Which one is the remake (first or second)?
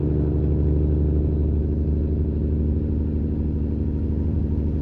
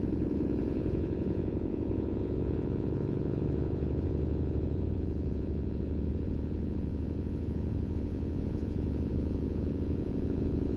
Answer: second